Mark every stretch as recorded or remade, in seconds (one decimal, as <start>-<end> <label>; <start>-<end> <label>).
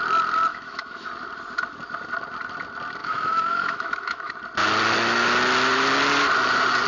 0.0-0.5 recorded; 0.5-1.1 remade; 1.1-3.0 recorded; 3.0-4.3 remade; 4.3-6.9 recorded